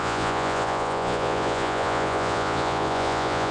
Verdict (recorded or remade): remade